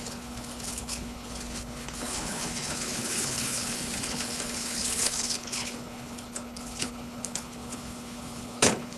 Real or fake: fake